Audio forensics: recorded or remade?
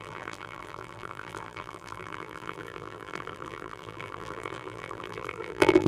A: remade